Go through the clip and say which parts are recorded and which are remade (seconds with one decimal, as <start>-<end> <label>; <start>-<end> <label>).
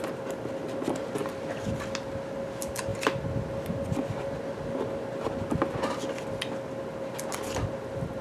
0.0-8.2 recorded